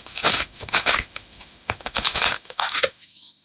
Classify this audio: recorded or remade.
remade